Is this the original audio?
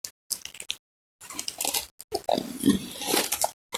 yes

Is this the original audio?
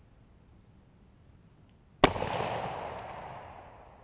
yes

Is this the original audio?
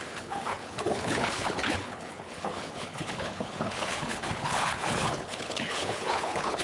no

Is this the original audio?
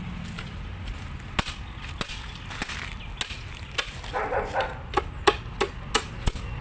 yes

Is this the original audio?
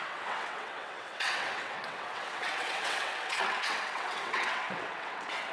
no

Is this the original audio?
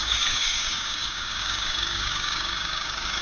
no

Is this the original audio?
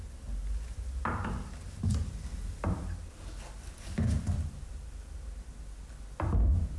yes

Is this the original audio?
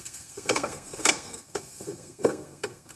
no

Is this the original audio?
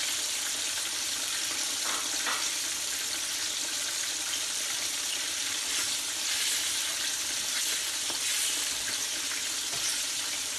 no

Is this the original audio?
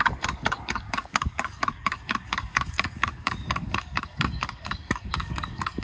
no